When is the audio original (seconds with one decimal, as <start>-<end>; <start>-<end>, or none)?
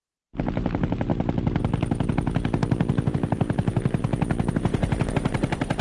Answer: 1.1-3.1; 4.0-4.5